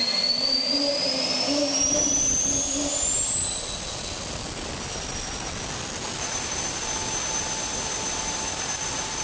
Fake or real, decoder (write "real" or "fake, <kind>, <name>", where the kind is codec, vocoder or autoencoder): real